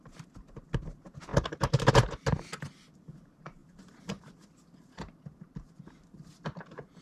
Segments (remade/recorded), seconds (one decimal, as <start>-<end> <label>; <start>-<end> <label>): 0.0-7.0 recorded